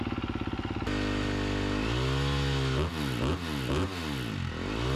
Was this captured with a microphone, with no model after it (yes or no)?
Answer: yes